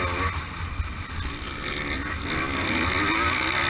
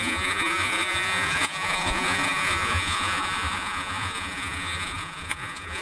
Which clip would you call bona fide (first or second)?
first